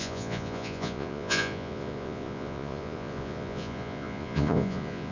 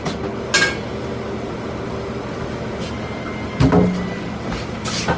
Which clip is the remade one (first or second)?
first